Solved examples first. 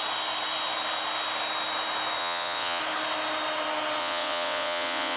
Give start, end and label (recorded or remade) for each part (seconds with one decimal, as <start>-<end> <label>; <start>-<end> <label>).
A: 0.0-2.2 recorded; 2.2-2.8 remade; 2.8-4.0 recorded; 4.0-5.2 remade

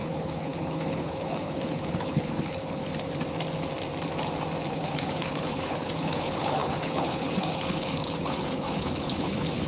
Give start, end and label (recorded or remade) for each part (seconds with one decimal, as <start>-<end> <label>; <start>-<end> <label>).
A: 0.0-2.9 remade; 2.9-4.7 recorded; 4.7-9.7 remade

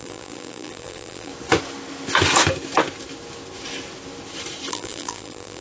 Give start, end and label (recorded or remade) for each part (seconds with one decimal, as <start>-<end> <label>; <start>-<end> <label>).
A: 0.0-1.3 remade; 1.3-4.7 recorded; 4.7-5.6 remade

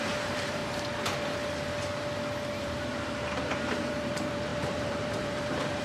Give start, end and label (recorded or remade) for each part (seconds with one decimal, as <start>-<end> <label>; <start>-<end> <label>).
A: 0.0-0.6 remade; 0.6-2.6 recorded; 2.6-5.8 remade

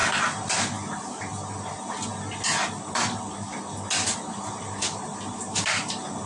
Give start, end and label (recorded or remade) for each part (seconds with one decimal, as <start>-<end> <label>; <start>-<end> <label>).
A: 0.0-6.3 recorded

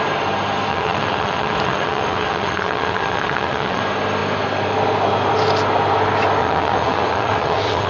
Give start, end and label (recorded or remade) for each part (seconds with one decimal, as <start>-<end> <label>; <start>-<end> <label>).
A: 0.0-0.7 recorded; 0.7-3.8 remade; 3.8-6.4 recorded; 6.4-7.9 remade

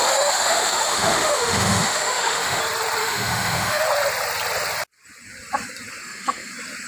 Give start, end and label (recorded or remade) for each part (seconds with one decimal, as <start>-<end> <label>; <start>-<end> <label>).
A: 0.0-2.6 remade; 2.6-3.0 recorded; 3.0-3.8 remade; 3.8-6.0 recorded; 6.0-6.5 remade; 6.5-6.9 recorded